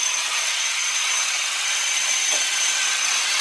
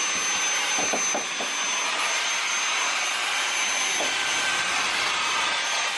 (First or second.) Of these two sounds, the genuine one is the second